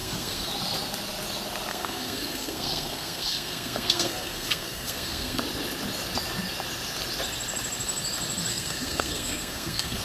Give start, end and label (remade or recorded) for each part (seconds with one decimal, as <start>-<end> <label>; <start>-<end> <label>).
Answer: 0.0-0.5 remade; 0.5-1.7 recorded; 1.7-5.4 remade; 5.4-8.5 recorded; 8.5-10.0 remade